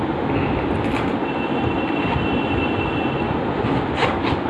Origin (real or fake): real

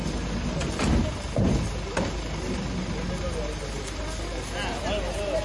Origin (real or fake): real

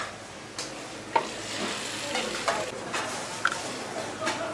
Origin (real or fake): real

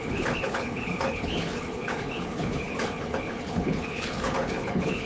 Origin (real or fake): fake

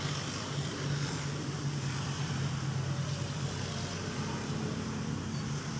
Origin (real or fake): real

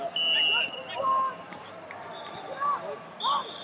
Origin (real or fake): real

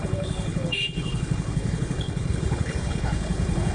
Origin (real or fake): fake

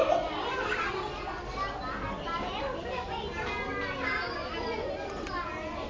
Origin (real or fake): real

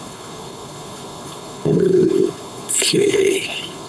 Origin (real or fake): fake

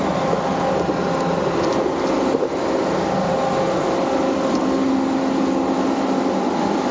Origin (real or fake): real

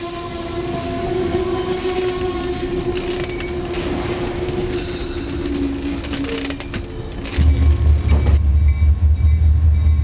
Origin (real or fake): real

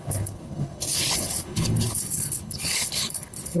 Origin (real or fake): fake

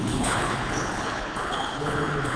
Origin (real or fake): fake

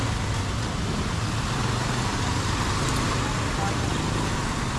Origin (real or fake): real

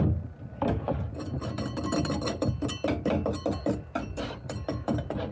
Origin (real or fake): real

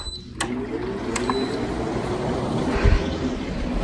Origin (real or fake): real